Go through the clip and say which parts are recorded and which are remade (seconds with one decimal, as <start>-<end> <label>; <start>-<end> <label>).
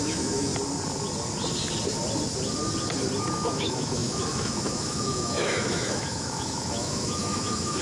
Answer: 0.0-0.5 remade; 0.5-3.2 recorded; 3.2-7.8 remade